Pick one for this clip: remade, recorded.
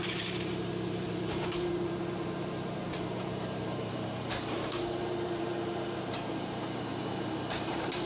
remade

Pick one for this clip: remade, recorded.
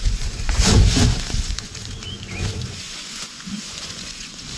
remade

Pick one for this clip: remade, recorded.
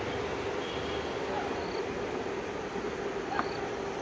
recorded